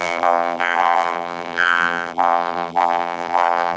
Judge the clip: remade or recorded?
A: remade